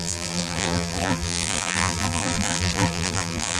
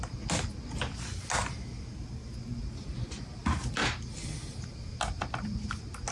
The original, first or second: second